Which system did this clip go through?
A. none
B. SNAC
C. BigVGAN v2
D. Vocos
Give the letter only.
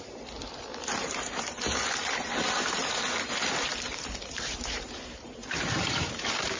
C